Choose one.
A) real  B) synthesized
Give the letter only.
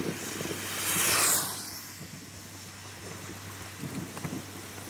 A